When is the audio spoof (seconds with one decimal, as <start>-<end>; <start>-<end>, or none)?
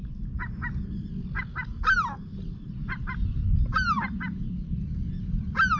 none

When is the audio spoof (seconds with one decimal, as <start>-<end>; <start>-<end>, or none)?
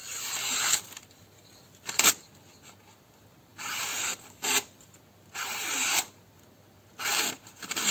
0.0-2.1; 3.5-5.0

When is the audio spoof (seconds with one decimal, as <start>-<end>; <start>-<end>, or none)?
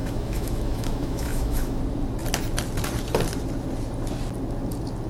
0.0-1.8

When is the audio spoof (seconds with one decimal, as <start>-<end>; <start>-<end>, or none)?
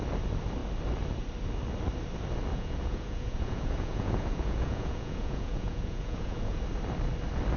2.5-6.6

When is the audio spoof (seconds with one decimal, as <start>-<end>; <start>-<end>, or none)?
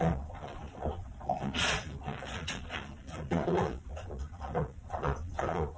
0.0-5.8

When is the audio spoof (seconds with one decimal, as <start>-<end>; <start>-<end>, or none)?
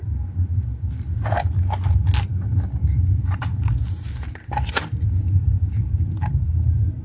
2.8-7.0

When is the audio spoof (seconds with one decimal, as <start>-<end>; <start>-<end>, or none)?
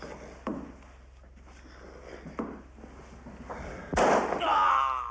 none